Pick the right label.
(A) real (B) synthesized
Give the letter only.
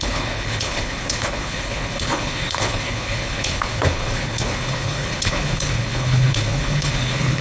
B